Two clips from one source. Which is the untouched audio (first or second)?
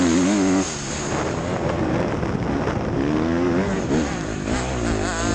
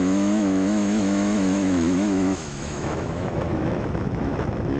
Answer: first